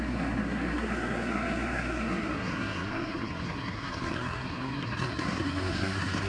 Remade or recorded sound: remade